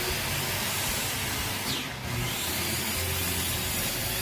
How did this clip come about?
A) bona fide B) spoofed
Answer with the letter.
A